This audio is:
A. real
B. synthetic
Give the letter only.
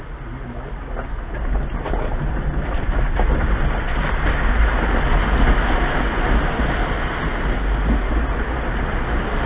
A